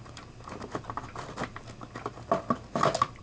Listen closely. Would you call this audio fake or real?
real